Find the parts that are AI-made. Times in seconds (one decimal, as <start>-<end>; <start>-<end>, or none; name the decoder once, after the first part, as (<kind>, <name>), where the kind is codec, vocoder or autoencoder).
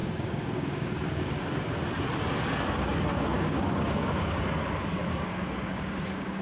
0.0-1.4 (codec, DAC); 3.1-4.4; 5.1-6.4